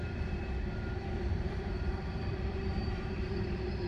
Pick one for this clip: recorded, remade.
remade